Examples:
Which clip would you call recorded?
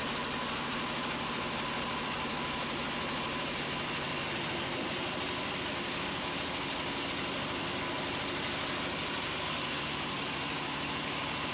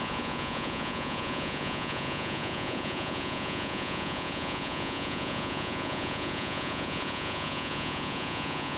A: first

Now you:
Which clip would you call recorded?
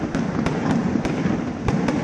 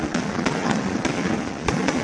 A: first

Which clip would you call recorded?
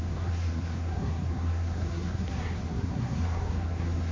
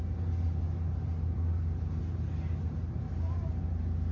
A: second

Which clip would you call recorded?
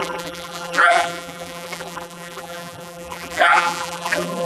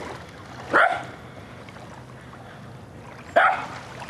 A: second